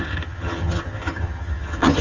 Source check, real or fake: fake